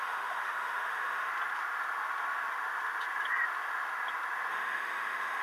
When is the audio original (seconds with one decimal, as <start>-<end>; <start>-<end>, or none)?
1.3-4.5